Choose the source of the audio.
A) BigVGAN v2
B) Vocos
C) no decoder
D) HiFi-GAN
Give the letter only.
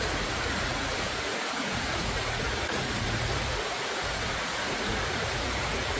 B